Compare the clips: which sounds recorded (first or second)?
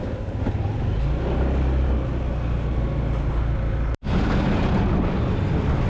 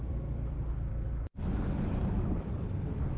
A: first